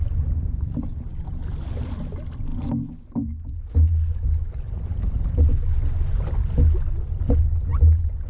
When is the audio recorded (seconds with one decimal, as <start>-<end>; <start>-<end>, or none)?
0.0-8.3